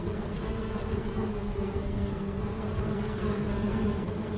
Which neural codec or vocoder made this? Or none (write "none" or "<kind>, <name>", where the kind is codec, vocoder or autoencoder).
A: codec, SNAC